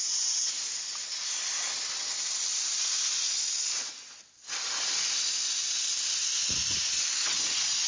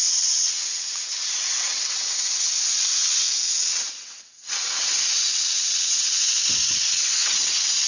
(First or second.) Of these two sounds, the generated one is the second